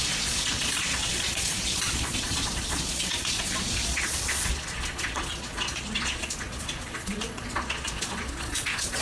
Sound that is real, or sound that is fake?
fake